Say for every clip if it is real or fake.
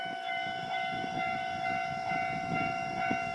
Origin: fake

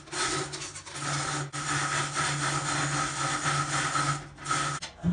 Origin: real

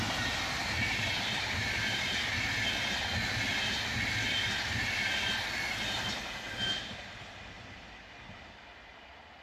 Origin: real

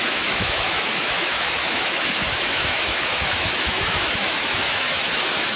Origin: fake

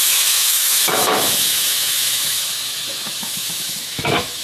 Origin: fake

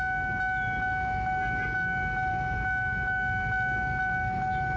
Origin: real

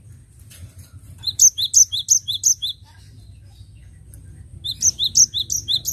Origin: real